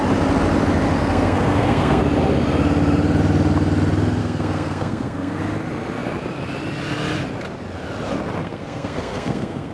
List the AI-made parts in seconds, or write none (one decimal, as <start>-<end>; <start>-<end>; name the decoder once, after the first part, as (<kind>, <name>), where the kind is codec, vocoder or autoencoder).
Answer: 1.0-2.0 (codec, SNAC); 4.2-5.4; 8.4-9.7